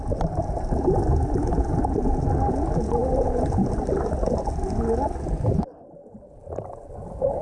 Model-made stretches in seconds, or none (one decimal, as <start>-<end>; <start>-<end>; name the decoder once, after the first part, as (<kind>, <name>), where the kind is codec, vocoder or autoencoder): none